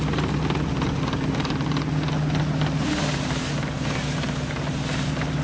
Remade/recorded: recorded